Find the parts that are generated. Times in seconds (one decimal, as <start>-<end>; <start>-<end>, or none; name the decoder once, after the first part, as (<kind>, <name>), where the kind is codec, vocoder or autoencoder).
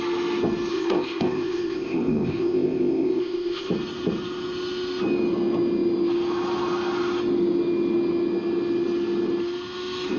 0.7-3.7 (codec, ZipCodec)